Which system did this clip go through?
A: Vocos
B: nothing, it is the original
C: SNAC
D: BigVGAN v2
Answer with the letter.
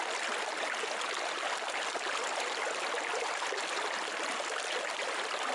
B